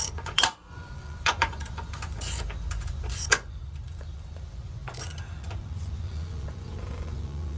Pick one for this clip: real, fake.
fake